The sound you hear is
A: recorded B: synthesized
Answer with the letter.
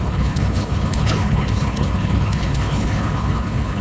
B